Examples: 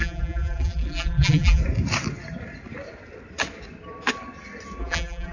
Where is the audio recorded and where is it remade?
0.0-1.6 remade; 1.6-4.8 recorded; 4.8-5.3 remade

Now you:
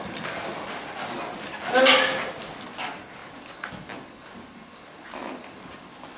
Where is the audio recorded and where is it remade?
0.0-3.2 recorded; 3.2-3.7 remade; 3.7-6.2 recorded

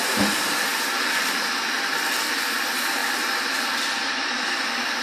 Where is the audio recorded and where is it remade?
0.0-5.0 remade

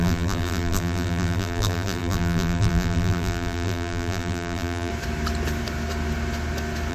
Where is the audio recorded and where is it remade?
0.0-4.9 remade; 4.9-6.9 recorded

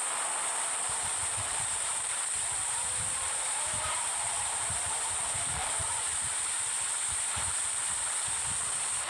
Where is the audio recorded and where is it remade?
0.0-1.5 recorded; 1.5-4.9 remade; 4.9-5.6 recorded; 5.6-8.1 remade; 8.1-9.1 recorded

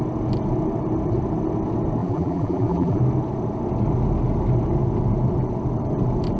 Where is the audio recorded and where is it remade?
0.0-2.0 recorded; 2.0-3.0 remade; 3.0-6.4 recorded